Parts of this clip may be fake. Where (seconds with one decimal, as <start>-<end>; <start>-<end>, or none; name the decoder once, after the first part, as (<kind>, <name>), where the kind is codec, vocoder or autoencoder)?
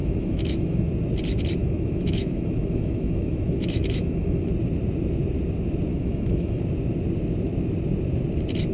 0.0-0.9 (autoencoder, DAC-VAE); 1.6-4.5; 5.9-6.6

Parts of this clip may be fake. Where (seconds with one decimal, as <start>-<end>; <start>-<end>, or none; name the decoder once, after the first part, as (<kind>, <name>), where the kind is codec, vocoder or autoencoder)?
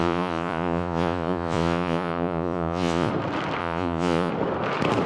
0.0-3.1 (vocoder, Vocos); 3.6-4.3